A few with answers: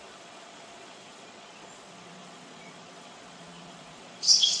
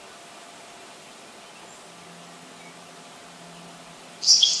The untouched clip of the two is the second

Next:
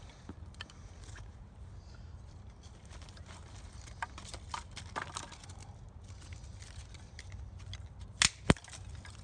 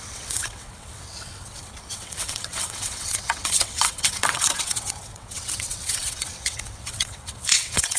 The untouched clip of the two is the first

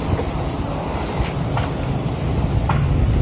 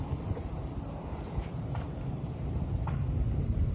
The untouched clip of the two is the first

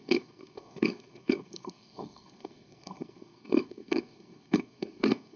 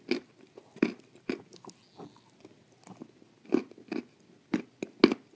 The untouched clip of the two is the second